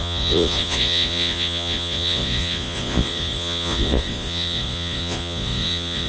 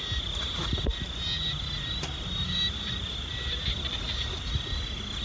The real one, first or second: second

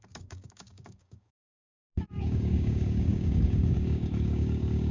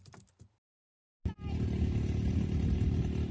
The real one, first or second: second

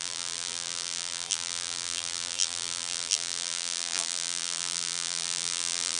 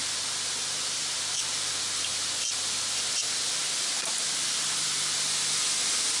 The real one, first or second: second